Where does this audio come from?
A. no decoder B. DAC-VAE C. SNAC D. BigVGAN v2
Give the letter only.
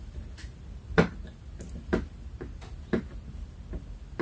A